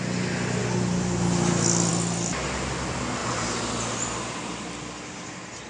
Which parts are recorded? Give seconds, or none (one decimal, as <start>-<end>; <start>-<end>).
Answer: 0.0-3.2